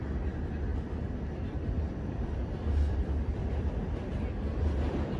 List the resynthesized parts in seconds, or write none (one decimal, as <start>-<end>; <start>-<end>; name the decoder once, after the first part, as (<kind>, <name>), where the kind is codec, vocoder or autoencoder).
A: 0.7-3.7 (vocoder, BigVGAN v2)